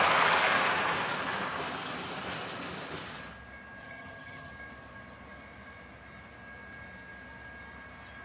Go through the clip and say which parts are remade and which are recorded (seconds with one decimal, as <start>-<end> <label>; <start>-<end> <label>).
0.0-3.8 recorded; 3.8-4.5 remade; 4.5-8.2 recorded